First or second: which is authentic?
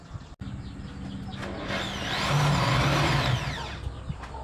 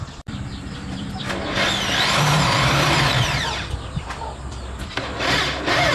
first